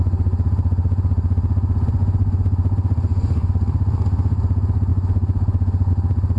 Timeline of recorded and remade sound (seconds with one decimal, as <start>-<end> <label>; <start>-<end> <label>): 0.0-2.0 recorded; 2.0-3.5 remade; 3.5-4.9 recorded; 4.9-5.9 remade; 5.9-6.4 recorded